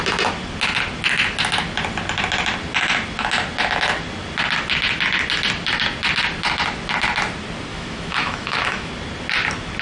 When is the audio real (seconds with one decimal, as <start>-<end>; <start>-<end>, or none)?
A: 0.0-7.7; 8.9-9.8

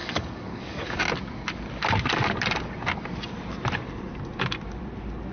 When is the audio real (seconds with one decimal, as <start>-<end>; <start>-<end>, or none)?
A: 1.0-5.3

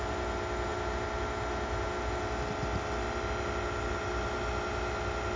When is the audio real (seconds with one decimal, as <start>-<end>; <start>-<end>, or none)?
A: 0.0-5.4

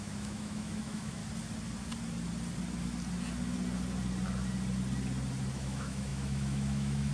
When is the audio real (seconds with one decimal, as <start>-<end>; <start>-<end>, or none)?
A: 1.2-5.5

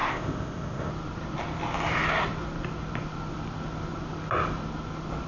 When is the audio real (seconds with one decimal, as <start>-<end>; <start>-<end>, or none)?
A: 0.9-5.3